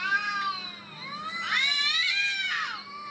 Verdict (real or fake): real